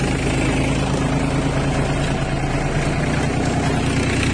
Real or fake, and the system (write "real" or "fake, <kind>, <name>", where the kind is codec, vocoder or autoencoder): real